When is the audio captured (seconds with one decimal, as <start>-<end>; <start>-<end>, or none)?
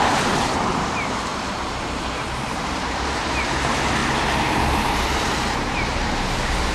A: 4.0-4.5